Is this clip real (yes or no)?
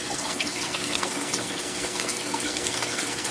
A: no